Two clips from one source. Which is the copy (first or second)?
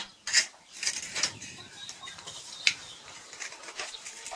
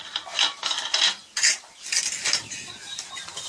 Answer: first